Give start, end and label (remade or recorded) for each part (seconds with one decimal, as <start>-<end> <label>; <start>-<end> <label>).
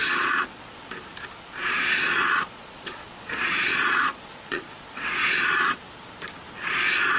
0.0-0.7 remade; 0.7-1.6 recorded; 1.6-5.8 remade; 5.8-7.2 recorded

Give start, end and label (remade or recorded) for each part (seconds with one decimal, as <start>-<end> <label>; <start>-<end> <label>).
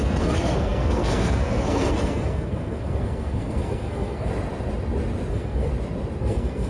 0.0-4.3 remade; 4.3-5.3 recorded; 5.3-5.7 remade; 5.7-6.2 recorded; 6.2-6.7 remade